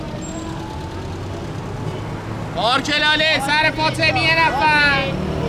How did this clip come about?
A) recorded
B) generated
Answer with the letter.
A